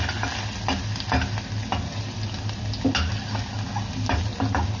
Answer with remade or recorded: recorded